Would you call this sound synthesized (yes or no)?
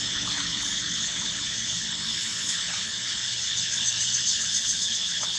yes